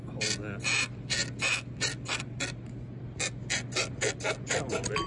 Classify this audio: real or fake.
real